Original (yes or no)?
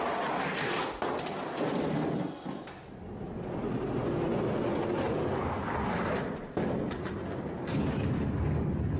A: yes